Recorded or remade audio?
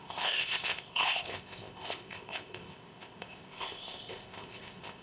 remade